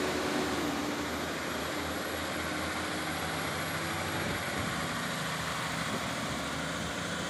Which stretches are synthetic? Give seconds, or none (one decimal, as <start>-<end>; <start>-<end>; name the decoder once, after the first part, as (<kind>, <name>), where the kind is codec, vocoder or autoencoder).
none